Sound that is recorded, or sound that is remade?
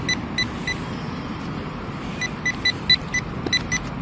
recorded